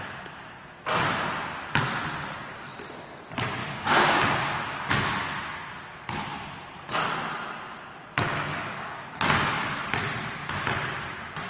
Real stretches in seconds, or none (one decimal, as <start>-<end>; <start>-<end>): 0.0-3.6; 4.9-8.5; 9.2-11.5